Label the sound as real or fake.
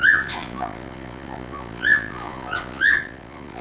fake